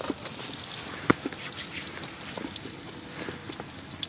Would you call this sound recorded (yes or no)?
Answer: yes